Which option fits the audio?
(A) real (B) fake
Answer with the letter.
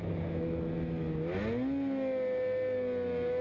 A